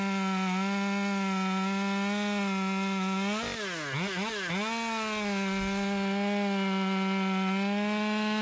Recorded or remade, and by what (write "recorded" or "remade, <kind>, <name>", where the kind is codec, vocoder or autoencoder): recorded